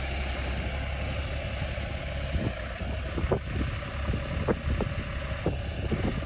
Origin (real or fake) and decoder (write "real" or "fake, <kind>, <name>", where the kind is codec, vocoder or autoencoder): real